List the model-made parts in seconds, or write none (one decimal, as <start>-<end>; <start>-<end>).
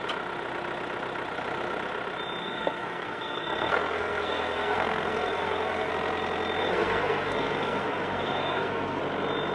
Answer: 2.4-5.9; 6.6-9.0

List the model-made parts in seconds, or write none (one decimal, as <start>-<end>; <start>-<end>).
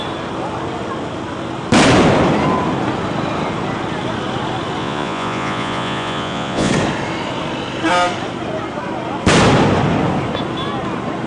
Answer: 4.8-6.7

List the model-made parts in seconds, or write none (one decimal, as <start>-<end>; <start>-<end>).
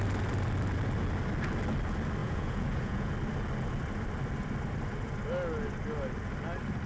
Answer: 2.2-3.1